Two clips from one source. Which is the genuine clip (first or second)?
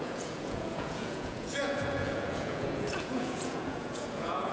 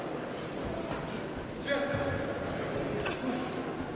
second